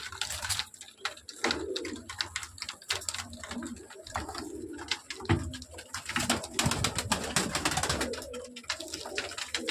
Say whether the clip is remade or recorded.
recorded